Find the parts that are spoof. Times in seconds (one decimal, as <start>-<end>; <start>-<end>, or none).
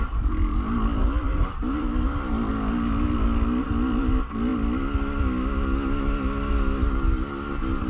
1.0-2.5